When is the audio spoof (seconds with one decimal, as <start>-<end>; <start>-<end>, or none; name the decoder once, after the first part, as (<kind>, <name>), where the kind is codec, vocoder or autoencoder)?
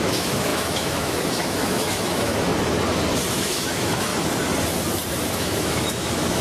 0.0-2.5 (autoencoder, DAC-VAE); 3.3-4.1; 5.3-6.4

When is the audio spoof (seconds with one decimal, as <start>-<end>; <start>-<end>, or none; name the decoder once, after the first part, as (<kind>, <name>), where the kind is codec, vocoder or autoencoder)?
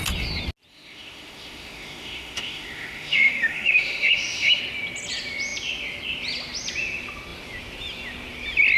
0.7-4.6 (autoencoder, DAC-VAE)